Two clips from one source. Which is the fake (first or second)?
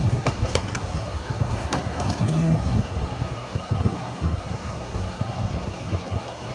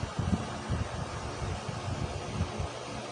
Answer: first